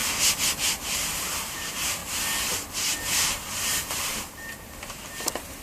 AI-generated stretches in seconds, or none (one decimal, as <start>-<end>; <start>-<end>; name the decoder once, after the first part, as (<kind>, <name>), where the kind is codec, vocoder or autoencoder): 0.7-2.0 (vocoder, BigVGAN v2); 3.0-5.6